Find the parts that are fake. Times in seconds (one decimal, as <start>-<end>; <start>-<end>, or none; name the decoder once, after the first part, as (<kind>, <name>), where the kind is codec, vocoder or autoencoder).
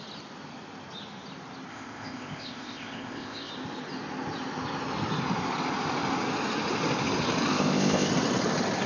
1.7-3.5 (codec, ZipCodec); 7.5-8.1